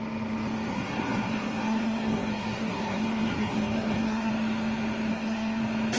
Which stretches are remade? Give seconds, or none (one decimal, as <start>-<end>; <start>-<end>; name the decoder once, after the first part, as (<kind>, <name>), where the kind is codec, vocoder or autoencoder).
0.7-4.3 (codec, SNAC); 5.1-5.6